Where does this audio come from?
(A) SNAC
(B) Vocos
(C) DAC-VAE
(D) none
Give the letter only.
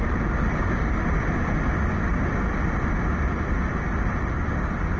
D